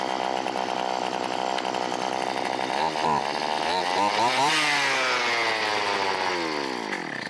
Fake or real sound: real